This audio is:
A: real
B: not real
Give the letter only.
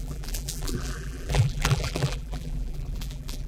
B